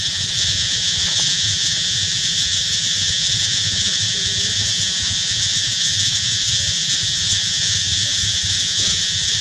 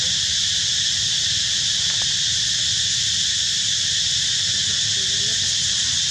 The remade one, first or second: first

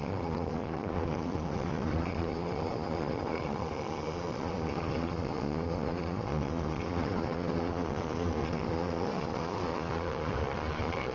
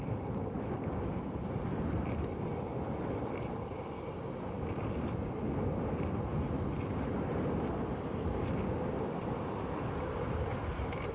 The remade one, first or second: first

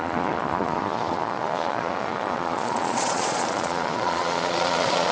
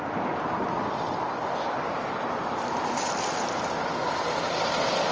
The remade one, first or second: first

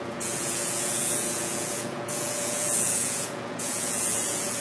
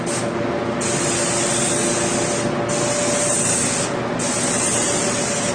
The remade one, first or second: first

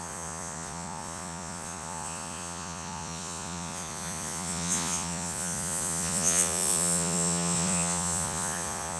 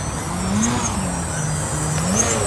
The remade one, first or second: first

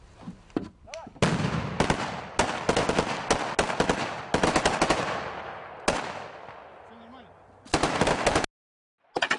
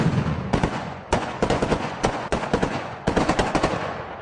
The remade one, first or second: second